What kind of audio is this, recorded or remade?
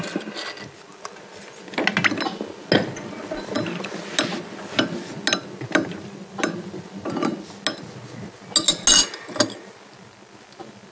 recorded